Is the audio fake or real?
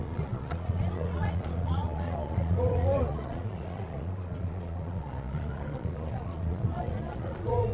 fake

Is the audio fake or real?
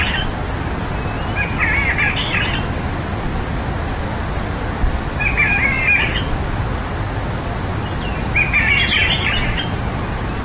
real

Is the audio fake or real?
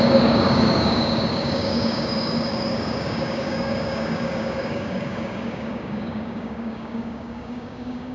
fake